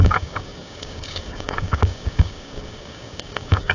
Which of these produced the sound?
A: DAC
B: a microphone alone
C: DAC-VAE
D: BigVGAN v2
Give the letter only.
A